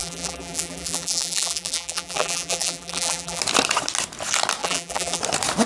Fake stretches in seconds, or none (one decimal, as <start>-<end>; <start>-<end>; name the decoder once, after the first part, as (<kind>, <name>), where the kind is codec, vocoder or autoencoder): 0.0-3.4 (vocoder, BigVGAN v2); 4.6-5.2